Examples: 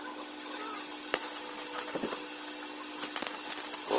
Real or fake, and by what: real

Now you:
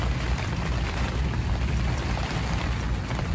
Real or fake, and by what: fake, vocoder, BigVGAN v2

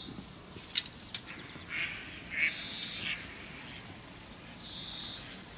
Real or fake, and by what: real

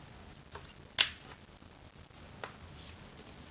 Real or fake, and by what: real